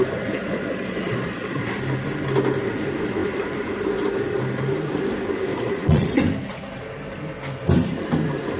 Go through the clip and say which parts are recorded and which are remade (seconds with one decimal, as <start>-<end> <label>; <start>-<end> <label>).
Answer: 0.0-0.4 recorded; 0.4-1.6 remade; 1.6-5.5 recorded; 5.5-6.2 remade; 6.2-8.6 recorded